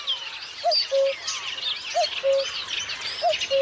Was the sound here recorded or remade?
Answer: recorded